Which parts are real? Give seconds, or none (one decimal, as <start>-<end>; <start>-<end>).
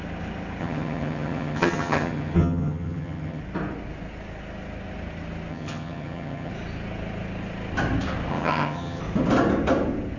0.0-0.6; 3.4-5.5; 6.5-8.3; 9.0-10.2